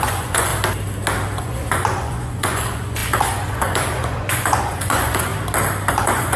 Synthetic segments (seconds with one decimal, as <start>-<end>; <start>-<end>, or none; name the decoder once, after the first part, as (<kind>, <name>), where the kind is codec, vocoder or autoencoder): 0.0-0.5 (vocoder, Vocos); 1.4-5.3; 5.9-6.4